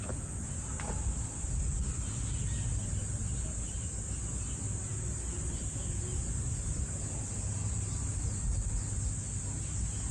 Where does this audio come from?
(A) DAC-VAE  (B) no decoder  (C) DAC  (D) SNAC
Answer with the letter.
B